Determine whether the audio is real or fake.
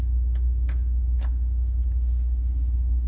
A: real